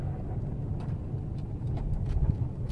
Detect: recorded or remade recorded